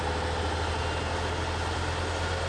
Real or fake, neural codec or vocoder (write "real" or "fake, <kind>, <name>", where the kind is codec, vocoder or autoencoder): real